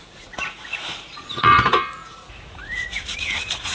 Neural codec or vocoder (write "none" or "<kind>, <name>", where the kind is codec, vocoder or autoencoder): vocoder, Vocos